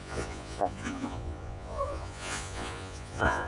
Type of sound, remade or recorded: remade